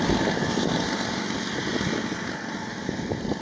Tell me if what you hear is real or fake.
real